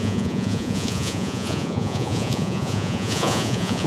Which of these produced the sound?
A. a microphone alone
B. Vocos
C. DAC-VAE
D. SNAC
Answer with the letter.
B